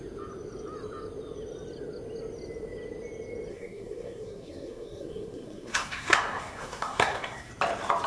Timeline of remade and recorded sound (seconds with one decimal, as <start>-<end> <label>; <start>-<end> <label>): 0.0-3.5 recorded; 3.5-7.5 remade; 7.5-8.1 recorded